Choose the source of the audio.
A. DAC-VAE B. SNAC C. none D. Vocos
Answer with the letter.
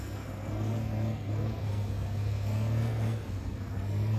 B